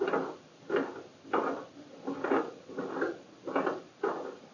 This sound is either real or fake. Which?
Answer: real